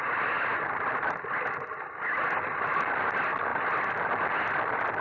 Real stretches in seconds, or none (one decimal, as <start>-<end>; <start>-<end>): 0.0-5.0